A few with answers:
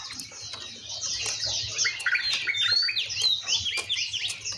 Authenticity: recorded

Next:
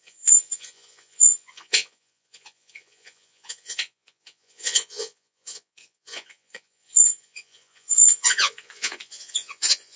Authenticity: remade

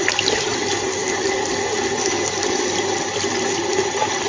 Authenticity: recorded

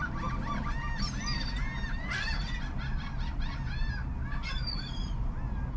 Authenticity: recorded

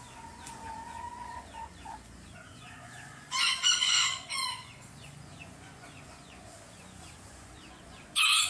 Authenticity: remade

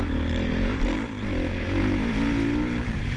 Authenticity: recorded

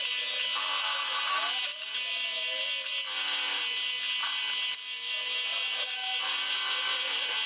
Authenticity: recorded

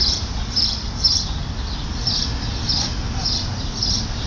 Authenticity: recorded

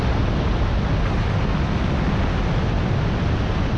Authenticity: recorded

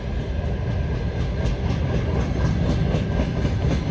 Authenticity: recorded